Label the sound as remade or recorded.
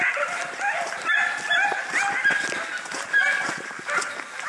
recorded